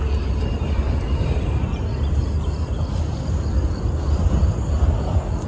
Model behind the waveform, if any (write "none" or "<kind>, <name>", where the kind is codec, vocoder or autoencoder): none